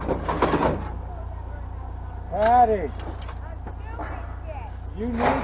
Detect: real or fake real